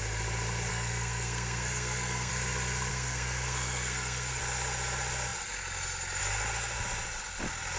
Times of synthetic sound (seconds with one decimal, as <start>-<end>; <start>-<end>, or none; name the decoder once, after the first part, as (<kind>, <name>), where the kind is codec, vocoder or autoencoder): 0.7-2.3 (codec, SNAC); 2.9-4.4